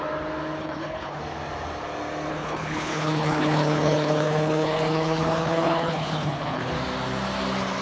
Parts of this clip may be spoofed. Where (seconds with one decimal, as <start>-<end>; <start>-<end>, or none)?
0.6-1.2; 2.3-6.7